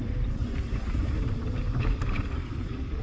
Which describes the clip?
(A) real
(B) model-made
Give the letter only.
B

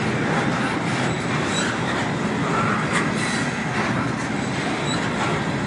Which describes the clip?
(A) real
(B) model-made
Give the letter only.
A